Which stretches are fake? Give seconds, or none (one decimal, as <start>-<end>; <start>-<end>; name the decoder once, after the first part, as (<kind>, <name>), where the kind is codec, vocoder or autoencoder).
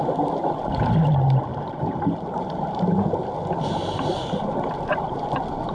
1.5-3.1 (vocoder, BigVGAN v2)